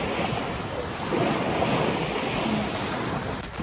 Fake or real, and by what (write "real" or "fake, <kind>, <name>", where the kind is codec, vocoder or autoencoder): real